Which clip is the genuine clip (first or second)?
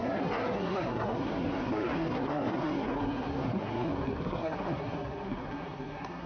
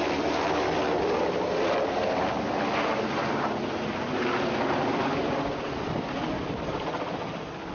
second